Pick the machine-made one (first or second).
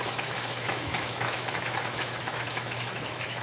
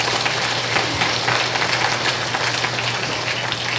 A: first